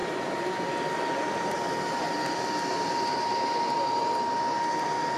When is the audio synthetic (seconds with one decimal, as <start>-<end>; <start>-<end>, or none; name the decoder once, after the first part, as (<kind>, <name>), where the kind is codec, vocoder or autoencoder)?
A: none

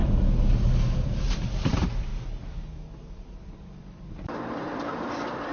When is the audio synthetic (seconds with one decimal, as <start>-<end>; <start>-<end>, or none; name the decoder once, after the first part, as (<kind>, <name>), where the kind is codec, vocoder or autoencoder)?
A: 1.3-2.1 (vocoder, BigVGAN v2); 3.6-5.5